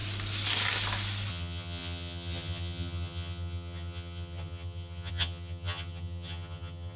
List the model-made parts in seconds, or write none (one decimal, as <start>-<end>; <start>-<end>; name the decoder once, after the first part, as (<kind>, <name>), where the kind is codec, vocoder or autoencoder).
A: 1.3-7.0 (vocoder, HiFi-GAN)